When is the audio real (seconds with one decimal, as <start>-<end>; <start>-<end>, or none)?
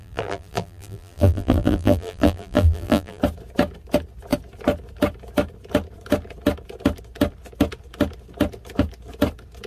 3.2-9.7